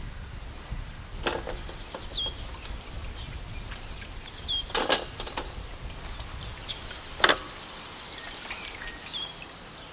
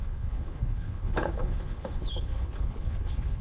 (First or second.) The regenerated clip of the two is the second